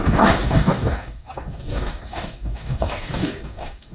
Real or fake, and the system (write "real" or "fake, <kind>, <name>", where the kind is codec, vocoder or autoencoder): fake, codec, DAC